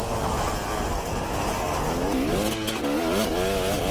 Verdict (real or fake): real